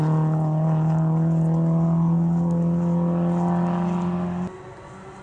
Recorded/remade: recorded